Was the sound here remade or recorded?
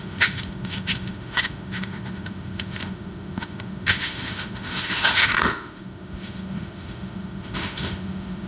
remade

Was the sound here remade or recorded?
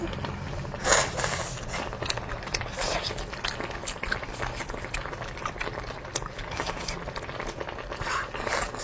recorded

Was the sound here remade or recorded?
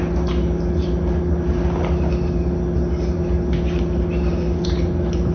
recorded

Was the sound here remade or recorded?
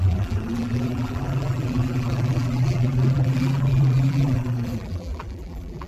remade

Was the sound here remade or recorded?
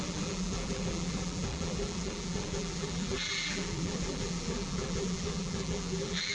remade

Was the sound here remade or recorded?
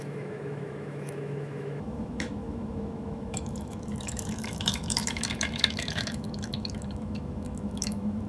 remade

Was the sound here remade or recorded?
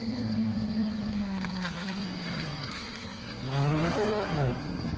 remade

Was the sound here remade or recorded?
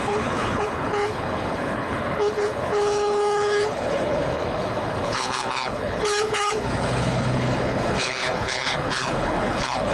remade